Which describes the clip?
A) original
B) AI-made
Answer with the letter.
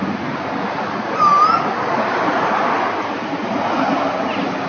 A